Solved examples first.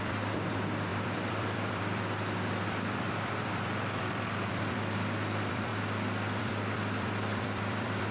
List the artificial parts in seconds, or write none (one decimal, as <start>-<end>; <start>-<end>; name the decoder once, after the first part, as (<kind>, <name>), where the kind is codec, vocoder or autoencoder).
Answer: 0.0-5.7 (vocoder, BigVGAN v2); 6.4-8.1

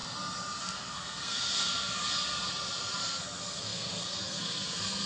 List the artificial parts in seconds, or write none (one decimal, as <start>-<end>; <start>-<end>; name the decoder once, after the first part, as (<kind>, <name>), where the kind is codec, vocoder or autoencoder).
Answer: 0.6-1.9 (codec, SNAC); 3.0-5.1

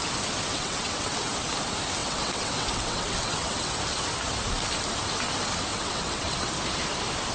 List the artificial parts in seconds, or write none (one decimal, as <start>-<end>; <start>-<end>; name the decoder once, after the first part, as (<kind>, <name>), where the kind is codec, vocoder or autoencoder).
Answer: 0.5-1.3 (vocoder, WaveNeXt); 2.0-3.7; 5.7-6.5

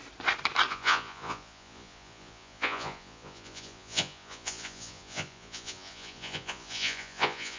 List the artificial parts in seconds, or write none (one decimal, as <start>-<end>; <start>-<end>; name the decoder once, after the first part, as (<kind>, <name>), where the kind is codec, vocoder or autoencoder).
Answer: 0.7-7.6 (vocoder, Vocos)

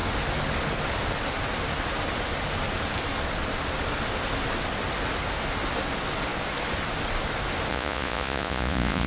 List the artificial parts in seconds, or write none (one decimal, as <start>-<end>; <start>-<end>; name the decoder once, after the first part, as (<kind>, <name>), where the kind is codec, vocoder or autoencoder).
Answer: 7.7-9.1 (vocoder, Vocos)